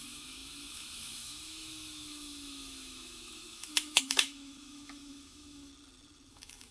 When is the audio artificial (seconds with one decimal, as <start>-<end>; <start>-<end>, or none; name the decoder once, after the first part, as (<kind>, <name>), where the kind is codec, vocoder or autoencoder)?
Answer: 0.0-5.7 (autoencoder, DAC-VAE); 6.3-6.7